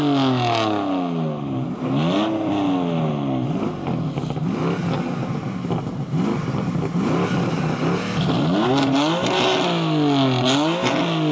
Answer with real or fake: real